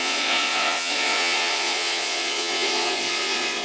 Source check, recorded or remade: remade